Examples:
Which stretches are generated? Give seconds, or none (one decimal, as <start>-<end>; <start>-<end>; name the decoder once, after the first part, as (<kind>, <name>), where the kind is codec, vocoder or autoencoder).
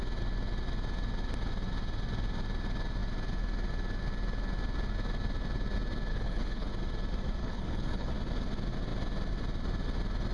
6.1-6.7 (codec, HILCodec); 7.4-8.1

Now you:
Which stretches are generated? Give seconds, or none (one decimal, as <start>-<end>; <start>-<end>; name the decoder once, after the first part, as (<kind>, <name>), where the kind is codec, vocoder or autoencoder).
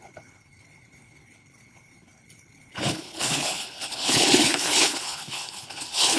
0.0-6.2 (codec, HILCodec)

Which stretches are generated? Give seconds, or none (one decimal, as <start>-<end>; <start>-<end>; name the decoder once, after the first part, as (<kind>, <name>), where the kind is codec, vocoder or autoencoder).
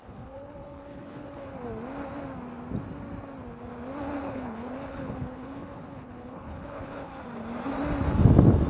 0.0-1.5 (codec, HILCodec); 4.2-7.1